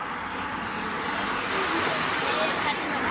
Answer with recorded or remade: remade